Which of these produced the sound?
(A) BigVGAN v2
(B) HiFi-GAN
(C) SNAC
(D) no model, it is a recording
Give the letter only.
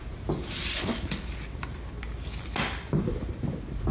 D